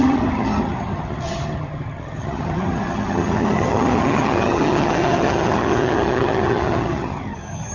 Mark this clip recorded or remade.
remade